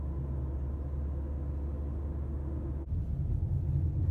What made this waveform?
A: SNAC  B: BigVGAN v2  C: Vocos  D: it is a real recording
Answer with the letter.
D